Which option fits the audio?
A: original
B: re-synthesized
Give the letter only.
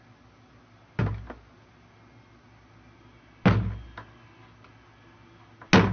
A